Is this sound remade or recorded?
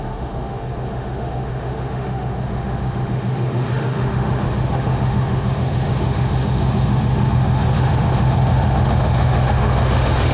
remade